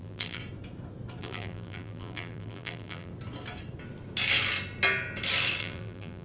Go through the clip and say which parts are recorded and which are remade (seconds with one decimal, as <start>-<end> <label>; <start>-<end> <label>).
0.0-0.4 remade; 0.4-1.2 recorded; 1.2-3.1 remade; 3.1-5.6 recorded; 5.6-6.2 remade